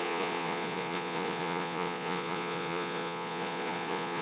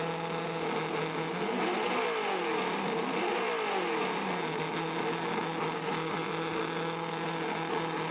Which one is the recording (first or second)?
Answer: second